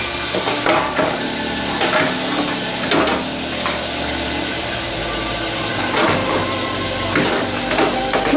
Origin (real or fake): real